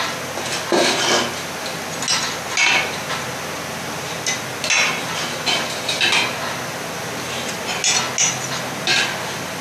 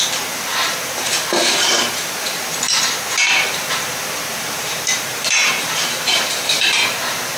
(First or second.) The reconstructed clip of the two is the second